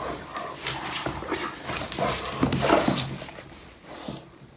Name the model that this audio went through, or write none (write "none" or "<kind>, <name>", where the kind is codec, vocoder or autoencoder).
none